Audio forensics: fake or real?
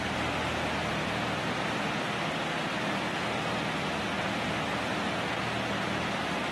real